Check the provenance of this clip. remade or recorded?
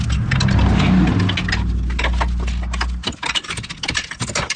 recorded